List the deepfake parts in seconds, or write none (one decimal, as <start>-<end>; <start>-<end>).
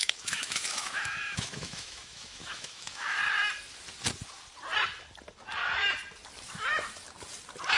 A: 0.0-3.2